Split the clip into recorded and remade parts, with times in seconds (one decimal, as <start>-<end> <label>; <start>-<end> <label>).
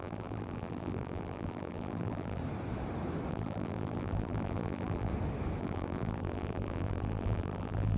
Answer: 0.0-2.4 remade; 2.4-3.3 recorded; 3.3-5.1 remade; 5.1-5.6 recorded; 5.6-8.0 remade